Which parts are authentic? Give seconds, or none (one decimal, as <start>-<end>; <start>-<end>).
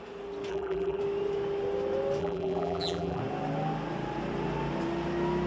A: 0.0-0.5; 1.0-2.2; 3.2-5.5